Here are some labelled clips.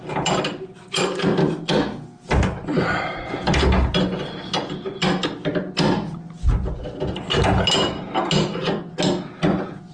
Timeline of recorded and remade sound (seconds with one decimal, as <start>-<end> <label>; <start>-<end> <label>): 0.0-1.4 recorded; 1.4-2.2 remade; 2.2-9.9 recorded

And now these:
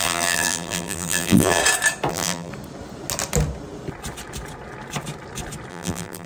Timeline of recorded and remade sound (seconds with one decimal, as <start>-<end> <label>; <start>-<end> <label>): 0.0-1.6 remade; 1.6-2.1 recorded; 2.1-2.5 remade; 2.5-5.7 recorded; 5.7-6.3 remade

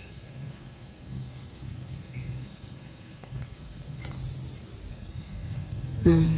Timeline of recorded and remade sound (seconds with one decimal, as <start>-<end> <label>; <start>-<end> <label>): 0.0-4.0 remade; 4.0-4.9 recorded; 4.9-6.4 remade

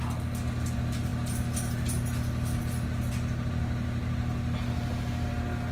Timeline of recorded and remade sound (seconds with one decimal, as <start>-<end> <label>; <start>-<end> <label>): 0.0-5.7 recorded